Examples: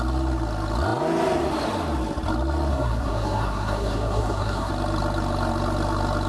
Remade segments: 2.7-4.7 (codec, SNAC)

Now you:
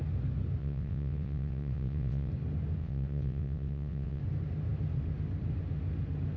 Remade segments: 0.6-2.3 (vocoder, WaveNeXt); 2.8-4.2